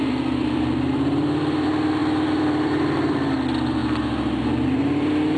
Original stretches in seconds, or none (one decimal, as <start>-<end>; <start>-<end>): none